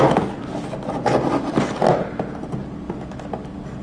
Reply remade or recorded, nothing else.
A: recorded